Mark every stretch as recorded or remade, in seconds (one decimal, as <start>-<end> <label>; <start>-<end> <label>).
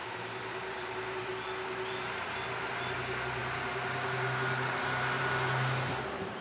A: 0.0-1.3 remade; 1.3-6.4 recorded